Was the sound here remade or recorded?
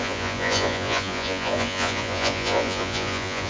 remade